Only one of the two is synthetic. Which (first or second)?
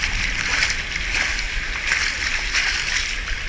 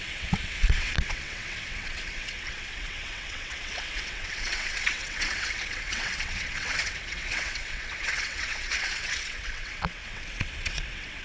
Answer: second